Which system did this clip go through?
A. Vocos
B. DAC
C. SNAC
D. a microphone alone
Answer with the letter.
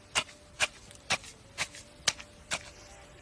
D